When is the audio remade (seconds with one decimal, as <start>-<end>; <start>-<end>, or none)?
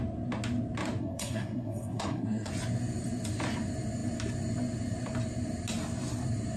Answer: 1.0-2.5